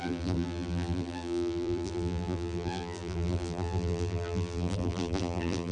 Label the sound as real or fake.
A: fake